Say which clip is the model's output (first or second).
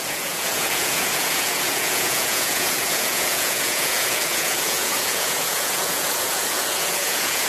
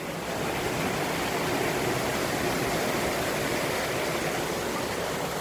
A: first